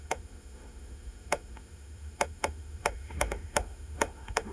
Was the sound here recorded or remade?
remade